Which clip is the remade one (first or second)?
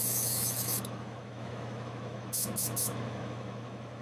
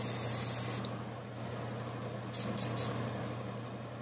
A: first